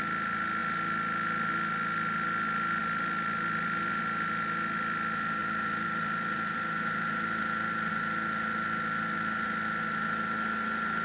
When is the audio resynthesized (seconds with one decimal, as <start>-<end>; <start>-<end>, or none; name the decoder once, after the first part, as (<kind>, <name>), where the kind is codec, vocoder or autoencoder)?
2.8-4.0 (vocoder, BigVGAN v2); 5.4-7.9